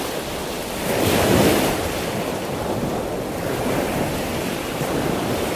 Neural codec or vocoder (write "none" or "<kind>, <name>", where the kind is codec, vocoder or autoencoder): none